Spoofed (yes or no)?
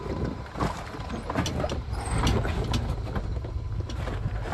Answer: no